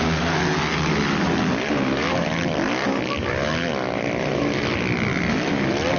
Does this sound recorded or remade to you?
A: recorded